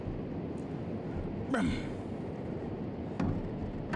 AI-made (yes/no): no